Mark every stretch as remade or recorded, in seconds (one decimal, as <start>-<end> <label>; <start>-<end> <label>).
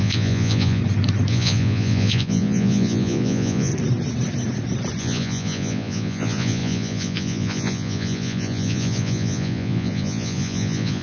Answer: 0.0-0.8 remade; 0.8-1.3 recorded; 1.3-3.7 remade; 3.7-5.0 recorded; 5.0-11.0 remade